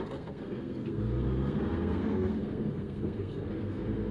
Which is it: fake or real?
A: fake